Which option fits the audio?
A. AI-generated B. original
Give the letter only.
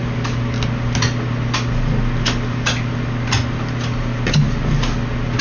B